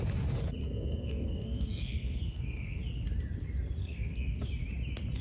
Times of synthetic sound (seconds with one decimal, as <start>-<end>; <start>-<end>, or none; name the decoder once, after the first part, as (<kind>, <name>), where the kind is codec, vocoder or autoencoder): 0.6-2.8 (codec, SNAC); 3.8-4.4